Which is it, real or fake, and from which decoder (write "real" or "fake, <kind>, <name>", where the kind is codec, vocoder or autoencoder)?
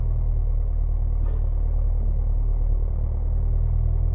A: real